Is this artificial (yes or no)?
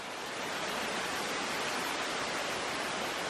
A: no